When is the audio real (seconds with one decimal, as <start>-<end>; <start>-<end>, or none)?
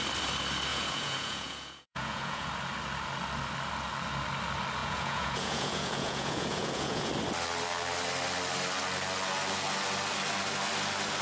0.0-0.7; 2.5-4.8; 7.1-11.2